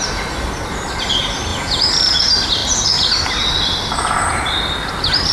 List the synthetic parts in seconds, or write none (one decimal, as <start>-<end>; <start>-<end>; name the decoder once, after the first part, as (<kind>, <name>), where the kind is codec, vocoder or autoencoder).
none